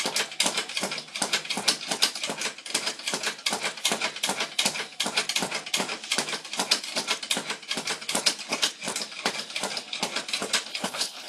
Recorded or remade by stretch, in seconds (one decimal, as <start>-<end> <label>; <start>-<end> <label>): 0.0-10.7 recorded; 10.7-11.3 remade